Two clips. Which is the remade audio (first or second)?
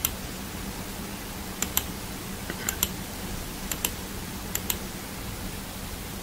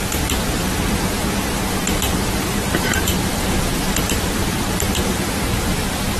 second